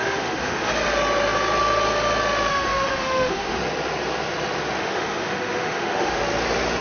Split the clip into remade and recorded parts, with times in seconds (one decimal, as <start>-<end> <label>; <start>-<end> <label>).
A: 0.0-0.7 remade; 0.7-2.5 recorded; 2.5-3.6 remade; 3.6-4.8 recorded; 4.8-6.2 remade; 6.2-6.8 recorded